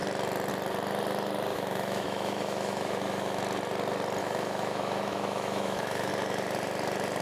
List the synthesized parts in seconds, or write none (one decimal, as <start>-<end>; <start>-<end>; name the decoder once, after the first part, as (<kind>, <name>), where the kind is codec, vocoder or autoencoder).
1.5-3.4 (autoencoder, DAC-VAE); 4.2-6.1